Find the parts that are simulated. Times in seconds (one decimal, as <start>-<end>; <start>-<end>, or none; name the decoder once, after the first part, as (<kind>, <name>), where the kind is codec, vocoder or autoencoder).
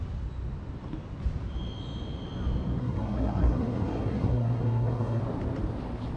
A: 2.8-5.2 (codec, SNAC)